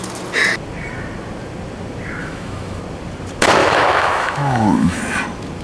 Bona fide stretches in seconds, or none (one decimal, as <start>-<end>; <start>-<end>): 0.0-2.2; 2.8-3.6; 5.0-5.6